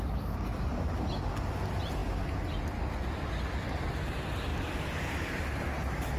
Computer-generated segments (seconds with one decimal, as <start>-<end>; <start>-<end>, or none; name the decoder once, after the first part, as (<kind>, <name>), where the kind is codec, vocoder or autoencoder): none